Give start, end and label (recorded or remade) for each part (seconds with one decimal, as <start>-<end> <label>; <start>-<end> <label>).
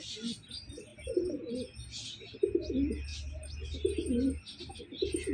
0.0-0.9 recorded; 0.9-1.5 remade; 1.5-5.3 recorded